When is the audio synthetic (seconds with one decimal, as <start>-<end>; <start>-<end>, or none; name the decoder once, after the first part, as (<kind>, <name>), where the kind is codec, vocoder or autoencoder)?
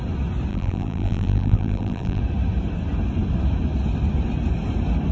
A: 0.5-2.2 (vocoder, BigVGAN v2)